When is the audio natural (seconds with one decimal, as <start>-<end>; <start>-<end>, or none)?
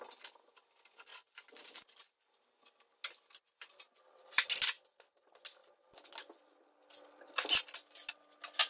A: 0.0-8.7